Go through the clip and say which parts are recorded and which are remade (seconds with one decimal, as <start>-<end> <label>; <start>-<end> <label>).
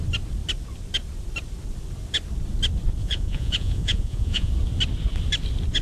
0.0-3.0 recorded; 3.0-4.5 remade; 4.5-5.8 recorded